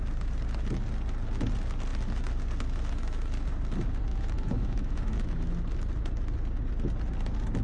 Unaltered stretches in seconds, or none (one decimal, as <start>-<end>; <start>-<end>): 0.0-4.1; 5.5-7.6